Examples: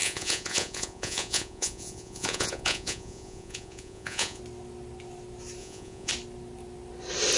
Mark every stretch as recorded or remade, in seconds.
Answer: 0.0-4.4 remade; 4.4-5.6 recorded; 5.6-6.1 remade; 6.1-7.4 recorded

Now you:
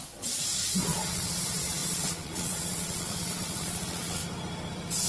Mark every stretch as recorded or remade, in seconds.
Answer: 0.0-4.2 remade; 4.2-5.1 recorded